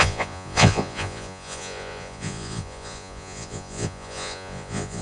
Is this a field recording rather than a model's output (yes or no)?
no